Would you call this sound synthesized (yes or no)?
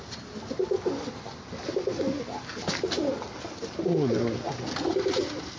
yes